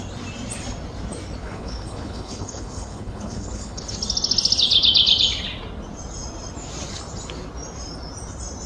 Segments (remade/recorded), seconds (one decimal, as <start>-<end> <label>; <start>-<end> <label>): 0.0-1.4 recorded; 1.4-3.8 remade; 3.8-8.7 recorded